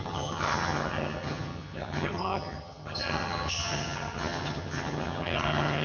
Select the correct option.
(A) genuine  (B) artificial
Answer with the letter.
B